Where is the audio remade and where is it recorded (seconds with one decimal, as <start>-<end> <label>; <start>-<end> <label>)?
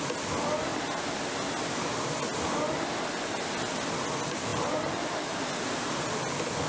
0.0-0.7 recorded; 0.7-1.2 remade; 1.2-4.5 recorded; 4.5-5.4 remade; 5.4-6.7 recorded